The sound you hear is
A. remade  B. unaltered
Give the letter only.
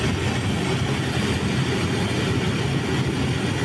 B